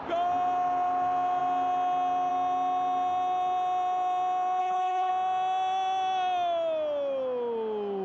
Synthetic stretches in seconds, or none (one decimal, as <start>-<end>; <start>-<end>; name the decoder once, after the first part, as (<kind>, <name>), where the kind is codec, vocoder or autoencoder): 4.6-5.1 (codec, HILCodec)